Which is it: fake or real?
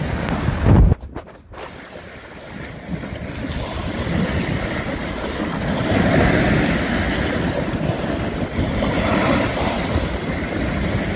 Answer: real